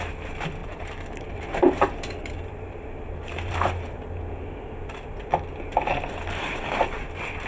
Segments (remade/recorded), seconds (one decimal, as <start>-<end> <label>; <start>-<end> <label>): 0.0-0.6 recorded; 0.6-4.1 remade; 4.1-5.7 recorded; 5.7-6.8 remade; 6.8-7.5 recorded